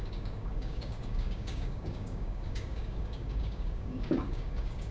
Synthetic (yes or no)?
yes